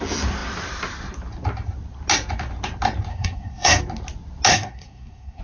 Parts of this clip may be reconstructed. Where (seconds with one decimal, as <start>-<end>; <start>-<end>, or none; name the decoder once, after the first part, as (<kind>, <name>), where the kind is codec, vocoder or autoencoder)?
3.1-3.8 (codec, SNAC); 4.5-5.4